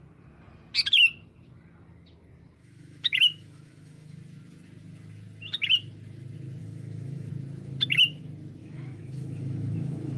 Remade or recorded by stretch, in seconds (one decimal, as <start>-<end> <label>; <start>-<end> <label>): 0.0-2.6 recorded; 2.6-4.2 remade; 4.2-6.6 recorded; 6.6-7.3 remade; 7.3-8.6 recorded; 8.6-10.2 remade